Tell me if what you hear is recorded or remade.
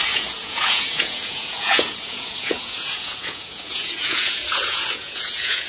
remade